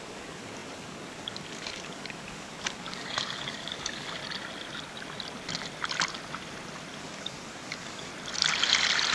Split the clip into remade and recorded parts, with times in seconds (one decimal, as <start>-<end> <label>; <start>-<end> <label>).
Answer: 0.0-4.2 remade; 4.2-7.0 recorded; 7.0-8.1 remade; 8.1-9.1 recorded

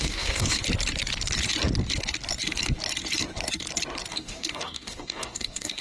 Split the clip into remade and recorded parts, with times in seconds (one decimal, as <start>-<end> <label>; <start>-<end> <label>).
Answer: 0.0-0.6 remade; 0.6-4.1 recorded; 4.1-5.8 remade

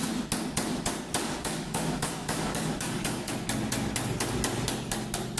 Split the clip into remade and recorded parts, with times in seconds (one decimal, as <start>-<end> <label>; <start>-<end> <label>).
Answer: 0.0-1.2 recorded; 1.2-3.3 remade; 3.3-5.4 recorded

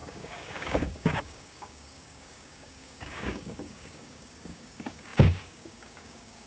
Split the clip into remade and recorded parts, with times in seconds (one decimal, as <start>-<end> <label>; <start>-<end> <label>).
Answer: 0.0-6.5 remade